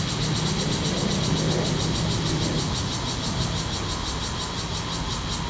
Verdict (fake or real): real